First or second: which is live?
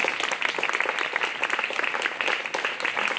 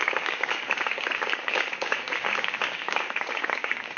first